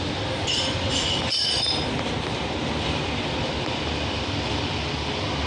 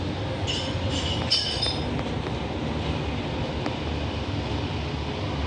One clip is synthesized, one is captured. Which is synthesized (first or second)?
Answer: first